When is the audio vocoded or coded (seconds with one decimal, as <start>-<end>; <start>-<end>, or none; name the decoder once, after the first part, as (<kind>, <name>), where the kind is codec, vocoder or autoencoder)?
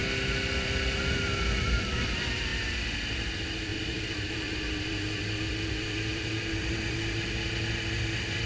3.7-7.2 (vocoder, BigVGAN v2)